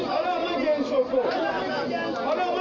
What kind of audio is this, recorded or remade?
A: recorded